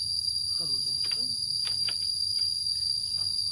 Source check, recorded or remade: remade